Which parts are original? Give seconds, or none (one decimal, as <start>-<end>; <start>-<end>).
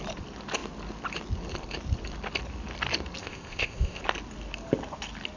0.0-3.2; 4.0-5.4